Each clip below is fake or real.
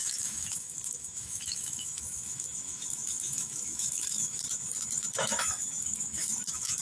fake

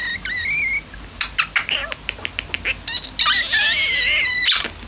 real